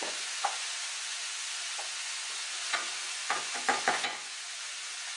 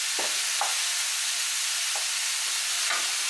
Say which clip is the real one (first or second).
second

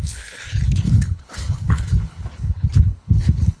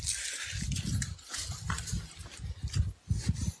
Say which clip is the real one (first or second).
second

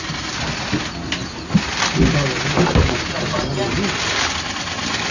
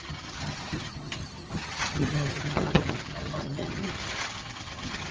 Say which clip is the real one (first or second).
first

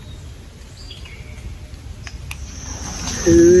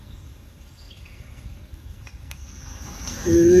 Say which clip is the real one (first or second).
first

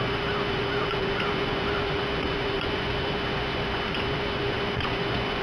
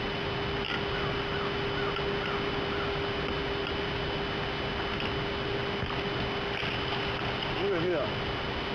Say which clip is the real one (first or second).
second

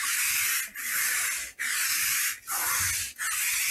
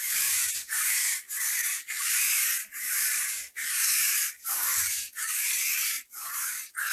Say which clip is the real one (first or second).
first